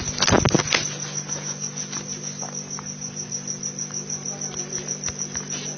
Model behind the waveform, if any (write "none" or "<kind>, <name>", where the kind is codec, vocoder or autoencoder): none